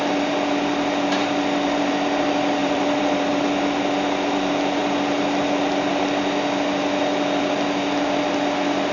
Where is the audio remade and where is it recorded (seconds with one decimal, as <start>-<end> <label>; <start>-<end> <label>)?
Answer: 0.0-2.6 recorded; 2.6-3.4 remade; 3.4-8.9 recorded